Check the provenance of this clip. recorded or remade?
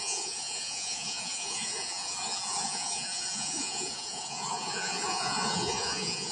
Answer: remade